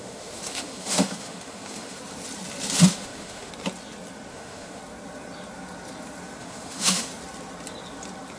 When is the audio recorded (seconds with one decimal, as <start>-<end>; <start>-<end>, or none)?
2.0-2.9; 3.5-4.3; 4.8-6.4; 7.1-8.4